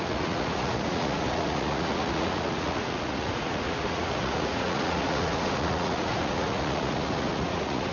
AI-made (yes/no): yes